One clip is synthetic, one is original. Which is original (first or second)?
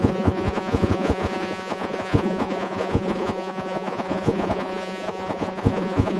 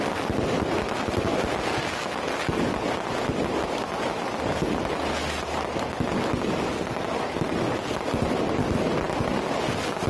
second